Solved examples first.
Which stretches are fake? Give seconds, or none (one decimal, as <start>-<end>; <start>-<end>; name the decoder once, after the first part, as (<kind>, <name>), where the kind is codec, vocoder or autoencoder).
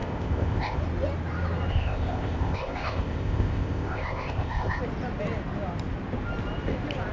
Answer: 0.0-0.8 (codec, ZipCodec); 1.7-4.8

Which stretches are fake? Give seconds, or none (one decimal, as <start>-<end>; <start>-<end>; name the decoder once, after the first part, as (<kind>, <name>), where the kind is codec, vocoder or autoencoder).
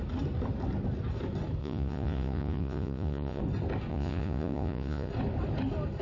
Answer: 1.6-3.4 (vocoder, Vocos); 3.9-5.1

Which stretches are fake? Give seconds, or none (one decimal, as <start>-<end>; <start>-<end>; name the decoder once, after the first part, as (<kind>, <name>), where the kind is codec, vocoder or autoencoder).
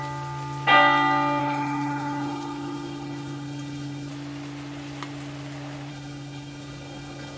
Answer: 1.4-4.1 (codec, HILCodec); 5.9-7.4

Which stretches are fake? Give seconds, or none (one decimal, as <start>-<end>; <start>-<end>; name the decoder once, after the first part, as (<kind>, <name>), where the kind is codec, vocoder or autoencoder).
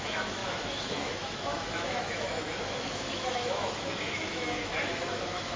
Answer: 0.0-5.6 (autoencoder, DAC-VAE)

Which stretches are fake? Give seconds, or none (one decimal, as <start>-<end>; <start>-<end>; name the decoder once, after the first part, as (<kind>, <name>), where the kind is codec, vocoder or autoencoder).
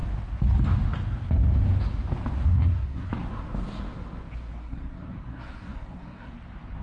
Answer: 2.6-3.1 (codec, SNAC); 4.6-6.3